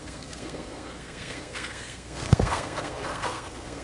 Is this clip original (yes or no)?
no